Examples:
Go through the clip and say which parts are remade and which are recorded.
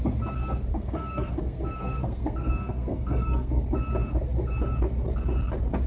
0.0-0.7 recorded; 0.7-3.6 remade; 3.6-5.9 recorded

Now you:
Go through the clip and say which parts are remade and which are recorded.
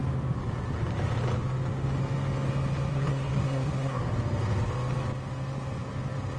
0.0-2.9 recorded; 2.9-4.0 remade; 4.0-6.4 recorded